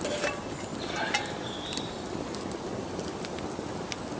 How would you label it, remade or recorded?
recorded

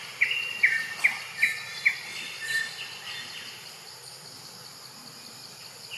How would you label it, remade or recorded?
recorded